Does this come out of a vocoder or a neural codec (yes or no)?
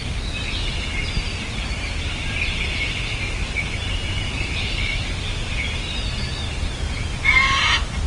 no